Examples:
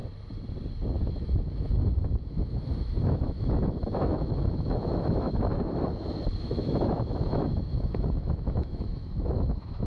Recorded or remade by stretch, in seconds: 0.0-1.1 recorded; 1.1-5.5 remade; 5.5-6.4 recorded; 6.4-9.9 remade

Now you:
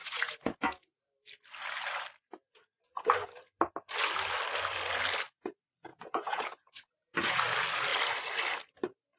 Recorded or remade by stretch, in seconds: 0.0-1.1 remade; 1.1-5.9 recorded; 5.9-7.4 remade; 7.4-9.2 recorded